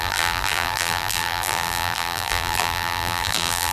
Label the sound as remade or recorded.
remade